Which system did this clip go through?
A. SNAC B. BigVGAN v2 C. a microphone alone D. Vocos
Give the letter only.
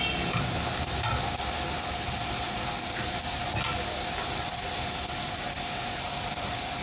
C